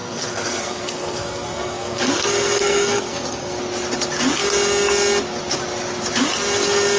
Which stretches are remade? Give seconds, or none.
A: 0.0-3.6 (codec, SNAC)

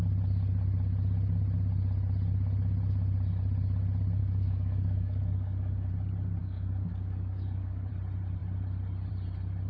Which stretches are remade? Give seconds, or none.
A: 4.2-5.9 (codec, DAC); 6.4-7.9

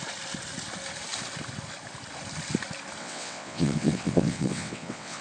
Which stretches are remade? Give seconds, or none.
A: 3.0-5.2 (vocoder, WaveNeXt)